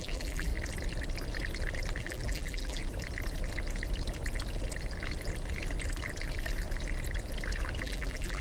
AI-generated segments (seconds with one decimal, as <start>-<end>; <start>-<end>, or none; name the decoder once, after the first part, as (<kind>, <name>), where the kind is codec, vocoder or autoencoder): 0.0-0.5 (vocoder, BigVGAN v2); 2.0-2.8; 7.8-8.4